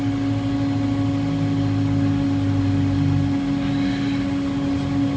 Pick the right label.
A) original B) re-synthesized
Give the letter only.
A